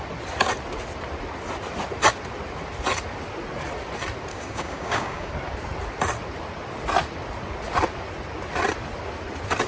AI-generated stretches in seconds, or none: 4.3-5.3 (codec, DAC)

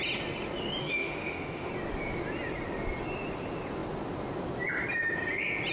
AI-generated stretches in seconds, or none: 0.8-1.7 (autoencoder, DAC-VAE)

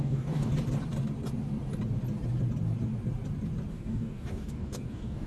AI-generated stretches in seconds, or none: 0.0-0.5 (codec, DAC); 3.7-5.3

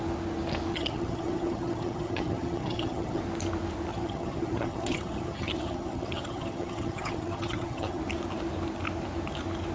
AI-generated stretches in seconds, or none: 0.7-3.2 (vocoder, HiFi-GAN); 3.9-8.0

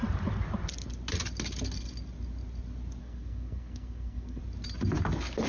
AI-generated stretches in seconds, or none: 3.0-4.4 (codec, SNAC)

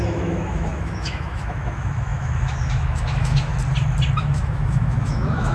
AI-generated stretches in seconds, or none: 0.0-3.5 (autoencoder, DAC-VAE); 4.2-5.5

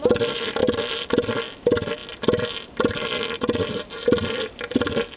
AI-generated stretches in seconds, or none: none